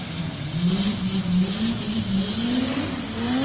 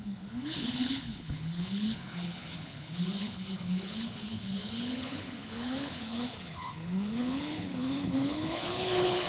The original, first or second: first